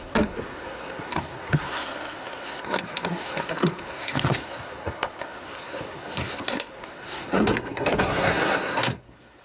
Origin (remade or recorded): remade